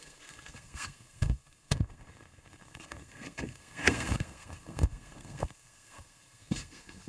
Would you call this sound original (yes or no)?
no